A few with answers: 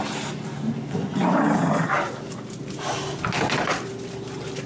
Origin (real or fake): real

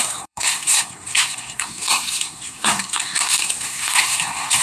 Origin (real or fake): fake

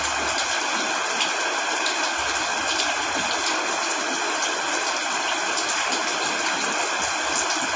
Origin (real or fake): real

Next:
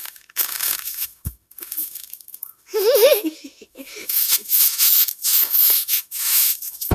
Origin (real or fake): fake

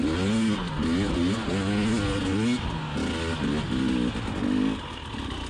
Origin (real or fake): real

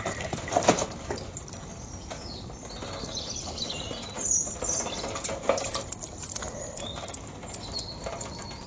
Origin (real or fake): real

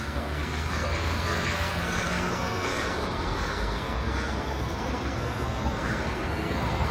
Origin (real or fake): fake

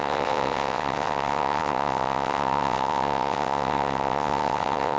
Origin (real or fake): fake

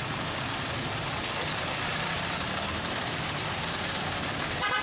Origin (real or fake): real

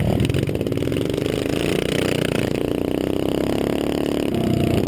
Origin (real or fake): real